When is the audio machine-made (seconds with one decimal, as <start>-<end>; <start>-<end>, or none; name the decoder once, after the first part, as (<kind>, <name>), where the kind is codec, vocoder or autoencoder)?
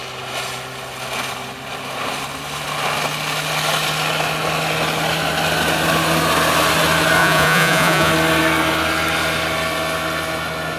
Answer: 7.2-8.1 (vocoder, Vocos)